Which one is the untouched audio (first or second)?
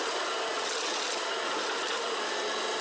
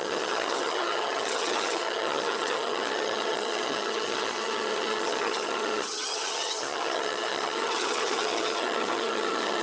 first